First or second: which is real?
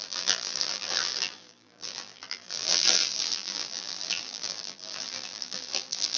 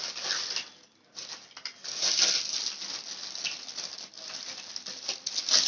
second